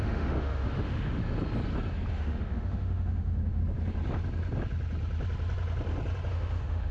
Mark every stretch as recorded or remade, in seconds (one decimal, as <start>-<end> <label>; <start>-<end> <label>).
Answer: 0.0-1.2 remade; 1.2-2.1 recorded; 2.1-3.6 remade; 3.6-6.3 recorded; 6.3-6.9 remade